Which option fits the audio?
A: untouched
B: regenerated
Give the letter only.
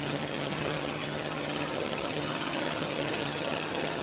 B